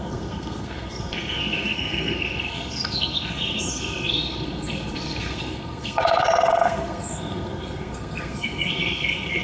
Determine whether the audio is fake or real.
fake